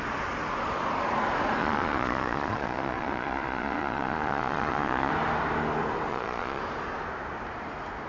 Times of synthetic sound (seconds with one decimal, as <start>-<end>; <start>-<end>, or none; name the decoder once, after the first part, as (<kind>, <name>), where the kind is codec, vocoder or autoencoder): 1.6-5.1 (vocoder, Vocos); 6.1-6.6